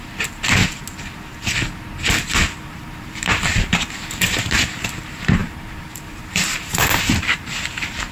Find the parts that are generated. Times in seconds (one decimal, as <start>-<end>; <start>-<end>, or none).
0.0-0.6; 2.7-8.1